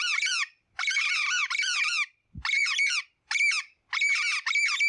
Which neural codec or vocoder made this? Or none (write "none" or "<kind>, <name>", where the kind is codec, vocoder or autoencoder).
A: none